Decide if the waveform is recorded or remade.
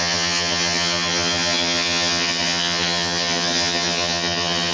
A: remade